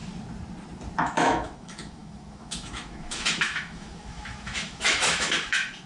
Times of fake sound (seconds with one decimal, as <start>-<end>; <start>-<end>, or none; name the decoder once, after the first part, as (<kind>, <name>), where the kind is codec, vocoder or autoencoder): 1.0-5.9 (autoencoder, DAC-VAE)